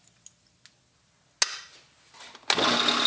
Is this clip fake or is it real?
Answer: real